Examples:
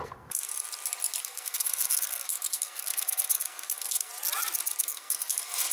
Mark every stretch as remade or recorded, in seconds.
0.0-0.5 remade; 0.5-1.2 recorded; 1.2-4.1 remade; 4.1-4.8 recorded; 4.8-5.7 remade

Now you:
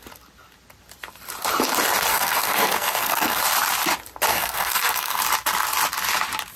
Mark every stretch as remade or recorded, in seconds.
0.0-2.1 recorded; 2.1-3.4 remade; 3.4-4.3 recorded; 4.3-5.2 remade; 5.2-6.6 recorded

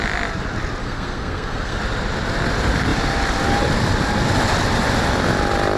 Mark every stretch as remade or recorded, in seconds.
0.0-0.8 recorded; 0.8-1.8 remade; 1.8-5.8 recorded

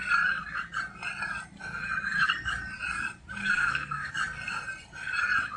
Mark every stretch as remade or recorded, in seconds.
0.0-3.4 recorded; 3.4-4.1 remade; 4.1-5.6 recorded

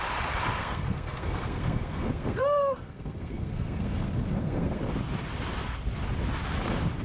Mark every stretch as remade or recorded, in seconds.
0.0-0.6 recorded; 0.6-4.8 remade; 4.8-7.0 recorded

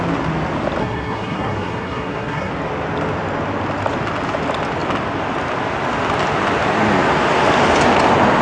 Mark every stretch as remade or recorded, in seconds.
0.0-0.8 recorded; 0.8-2.5 remade; 2.5-8.4 recorded

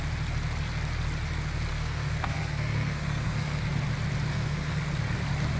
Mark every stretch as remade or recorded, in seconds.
0.0-1.7 recorded; 1.7-3.6 remade; 3.6-4.3 recorded; 4.3-4.8 remade; 4.8-5.6 recorded